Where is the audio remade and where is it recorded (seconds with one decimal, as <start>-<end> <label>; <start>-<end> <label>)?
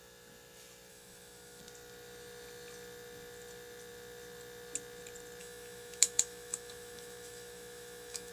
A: 0.0-0.9 recorded; 0.9-1.6 remade; 1.6-5.4 recorded; 5.4-8.3 remade